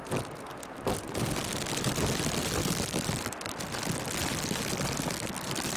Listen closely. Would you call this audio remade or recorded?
recorded